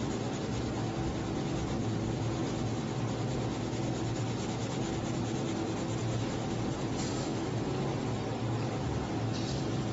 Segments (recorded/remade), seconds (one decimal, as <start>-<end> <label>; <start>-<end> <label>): 0.0-9.9 recorded